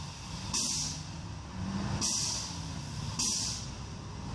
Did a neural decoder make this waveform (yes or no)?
no